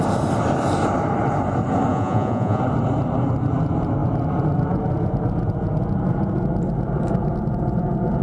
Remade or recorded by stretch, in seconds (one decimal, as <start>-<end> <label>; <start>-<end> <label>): 0.0-1.9 recorded; 1.9-2.6 remade; 2.6-8.2 recorded